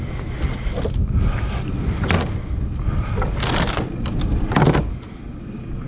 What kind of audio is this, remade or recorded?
recorded